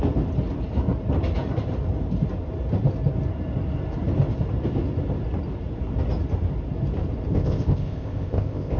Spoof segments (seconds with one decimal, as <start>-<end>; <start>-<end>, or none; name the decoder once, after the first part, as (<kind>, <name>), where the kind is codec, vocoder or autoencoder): 7.3-8.8 (codec, ZipCodec)